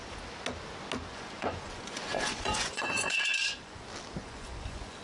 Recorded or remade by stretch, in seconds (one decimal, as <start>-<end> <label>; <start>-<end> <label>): 0.0-1.1 recorded; 1.1-3.8 remade; 3.8-4.2 recorded; 4.2-5.0 remade